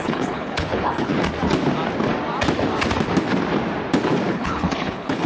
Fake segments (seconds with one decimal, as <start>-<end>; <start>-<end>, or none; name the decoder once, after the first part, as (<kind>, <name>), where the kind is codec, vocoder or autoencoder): 0.0-1.1 (codec, HILCodec); 4.3-5.3